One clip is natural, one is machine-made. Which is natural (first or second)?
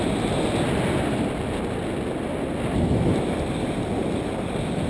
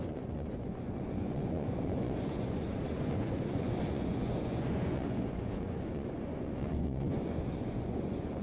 first